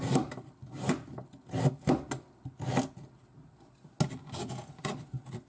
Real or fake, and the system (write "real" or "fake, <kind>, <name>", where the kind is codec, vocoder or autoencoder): real